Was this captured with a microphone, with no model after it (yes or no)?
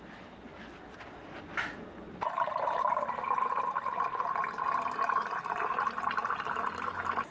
yes